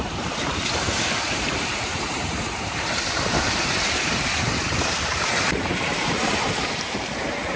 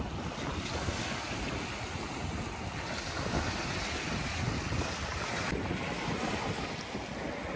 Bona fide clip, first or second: second